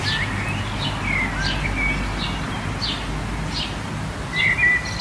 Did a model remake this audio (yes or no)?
no